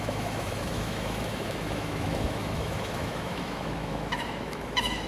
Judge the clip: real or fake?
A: fake